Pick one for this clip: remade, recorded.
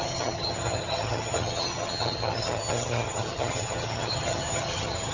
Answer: remade